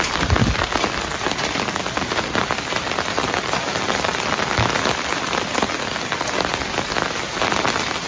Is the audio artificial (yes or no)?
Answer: no